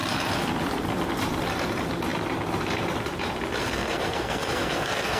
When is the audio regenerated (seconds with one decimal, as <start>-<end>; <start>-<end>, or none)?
3.6-5.2